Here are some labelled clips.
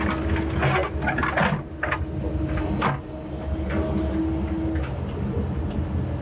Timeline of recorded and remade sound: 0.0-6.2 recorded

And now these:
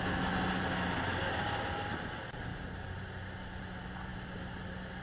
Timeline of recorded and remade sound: 0.0-2.5 recorded; 2.5-3.6 remade; 3.6-4.1 recorded; 4.1-5.0 remade

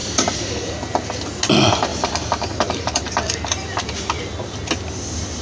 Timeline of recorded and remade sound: 0.0-1.9 recorded; 1.9-4.3 remade; 4.3-5.4 recorded

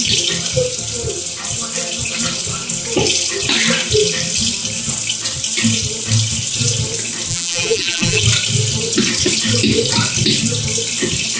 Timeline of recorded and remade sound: 0.0-7.3 recorded; 7.3-8.2 remade; 8.2-11.4 recorded

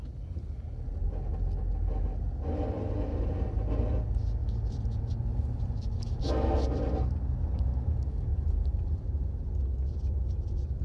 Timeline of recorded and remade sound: 0.0-3.1 recorded; 3.1-3.6 remade; 3.6-4.4 recorded; 4.4-6.2 remade; 6.2-8.3 recorded; 8.3-9.3 remade; 9.3-10.8 recorded